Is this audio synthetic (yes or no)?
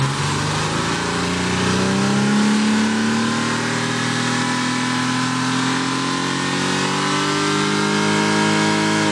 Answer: no